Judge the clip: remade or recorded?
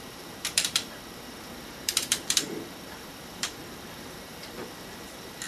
remade